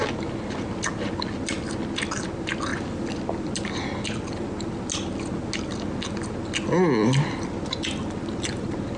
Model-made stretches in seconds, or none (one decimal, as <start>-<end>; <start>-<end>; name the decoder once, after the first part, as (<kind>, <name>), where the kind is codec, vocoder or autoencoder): none